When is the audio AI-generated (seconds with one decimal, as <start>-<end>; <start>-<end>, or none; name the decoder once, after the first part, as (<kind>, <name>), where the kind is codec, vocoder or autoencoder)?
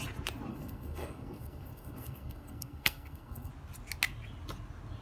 0.5-3.5 (codec, SNAC)